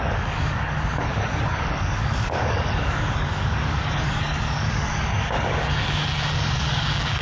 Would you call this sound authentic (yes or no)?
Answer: no